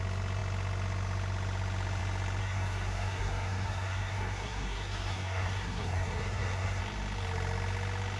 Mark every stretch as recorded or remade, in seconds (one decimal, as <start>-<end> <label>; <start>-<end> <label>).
0.0-2.4 recorded; 2.4-6.8 remade; 6.8-8.2 recorded